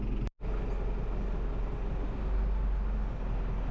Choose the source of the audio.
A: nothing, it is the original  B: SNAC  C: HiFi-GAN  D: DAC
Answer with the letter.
A